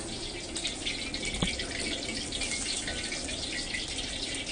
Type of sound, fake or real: real